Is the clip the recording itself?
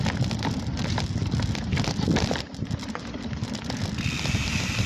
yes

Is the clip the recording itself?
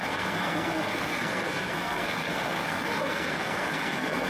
no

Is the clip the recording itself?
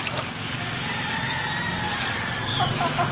yes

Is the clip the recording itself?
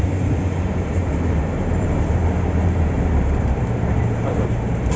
no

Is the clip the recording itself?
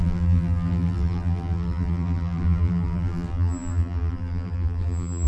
no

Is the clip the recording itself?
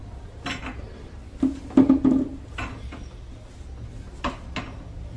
yes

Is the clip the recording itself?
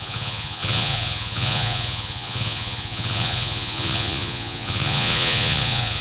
no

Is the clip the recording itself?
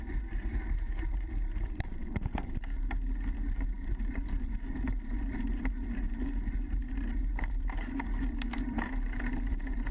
no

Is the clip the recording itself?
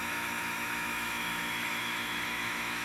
no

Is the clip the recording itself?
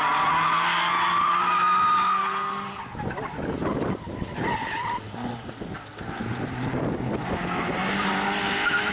yes